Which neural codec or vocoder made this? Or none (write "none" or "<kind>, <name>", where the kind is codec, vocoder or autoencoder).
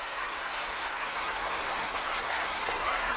codec, SNAC